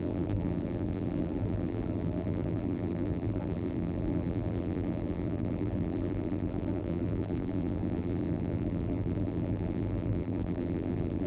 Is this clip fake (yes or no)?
yes